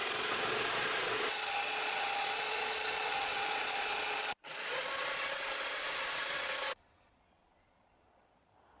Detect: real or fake fake